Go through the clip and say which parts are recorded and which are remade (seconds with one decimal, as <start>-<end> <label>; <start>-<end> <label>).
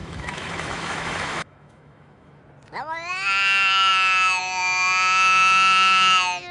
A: 0.0-2.4 remade; 2.4-6.5 recorded